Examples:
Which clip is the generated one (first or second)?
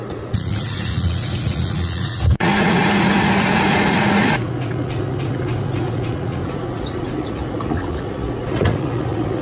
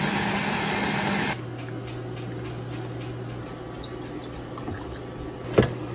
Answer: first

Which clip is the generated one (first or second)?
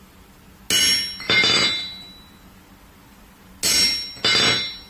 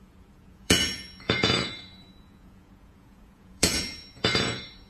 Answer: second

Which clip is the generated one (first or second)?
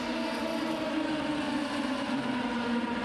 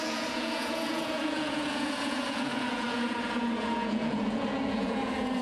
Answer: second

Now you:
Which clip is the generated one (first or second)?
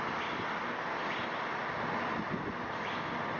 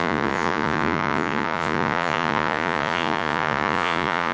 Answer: second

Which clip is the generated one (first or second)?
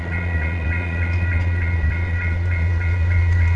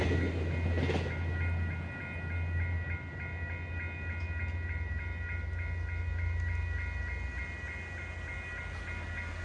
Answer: first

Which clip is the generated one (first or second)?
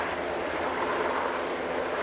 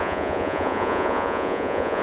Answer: second